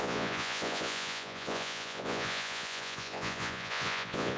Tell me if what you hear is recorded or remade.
remade